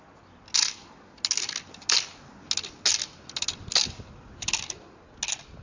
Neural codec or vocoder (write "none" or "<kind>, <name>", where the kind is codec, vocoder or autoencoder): none